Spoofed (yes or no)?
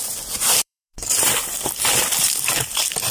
yes